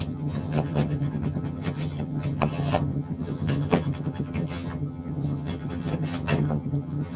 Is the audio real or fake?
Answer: fake